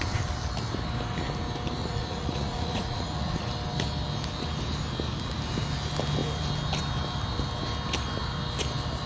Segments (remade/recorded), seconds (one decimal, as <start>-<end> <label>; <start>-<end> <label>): 0.0-1.8 recorded; 1.8-3.5 remade; 3.5-9.1 recorded